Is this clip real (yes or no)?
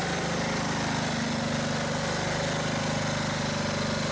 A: yes